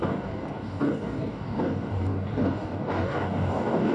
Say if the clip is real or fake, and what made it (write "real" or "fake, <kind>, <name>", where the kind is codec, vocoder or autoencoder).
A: fake, codec, DAC